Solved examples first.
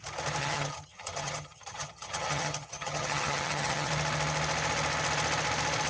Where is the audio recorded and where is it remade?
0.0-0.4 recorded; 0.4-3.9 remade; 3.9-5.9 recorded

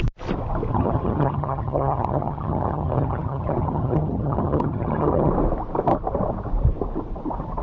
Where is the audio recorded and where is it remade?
0.0-0.7 recorded; 0.7-5.3 remade; 5.3-7.6 recorded

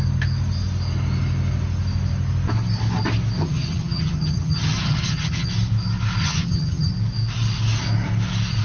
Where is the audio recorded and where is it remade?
0.0-3.4 recorded; 3.4-5.5 remade; 5.5-6.2 recorded; 6.2-6.9 remade; 6.9-8.6 recorded

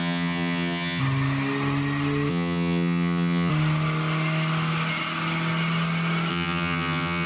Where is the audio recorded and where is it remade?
0.0-1.0 remade; 1.0-2.3 recorded; 2.3-3.5 remade; 3.5-6.3 recorded; 6.3-7.3 remade